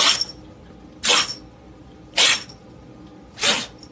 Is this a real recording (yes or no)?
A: yes